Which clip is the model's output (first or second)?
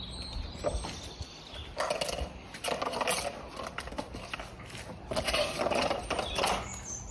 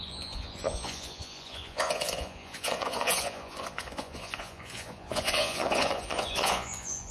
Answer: second